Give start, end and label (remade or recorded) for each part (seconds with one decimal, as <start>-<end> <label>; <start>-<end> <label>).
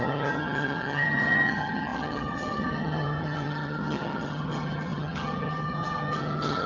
0.0-6.7 remade